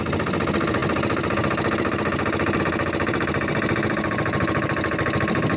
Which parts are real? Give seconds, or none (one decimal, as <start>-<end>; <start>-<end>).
0.0-5.6